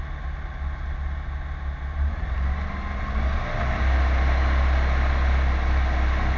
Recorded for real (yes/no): yes